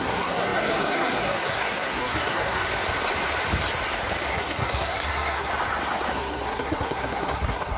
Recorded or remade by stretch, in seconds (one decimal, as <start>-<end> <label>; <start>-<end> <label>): 0.0-2.7 remade; 2.7-4.3 recorded; 4.3-5.5 remade; 5.5-6.1 recorded; 6.1-7.8 remade